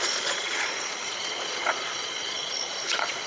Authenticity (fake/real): fake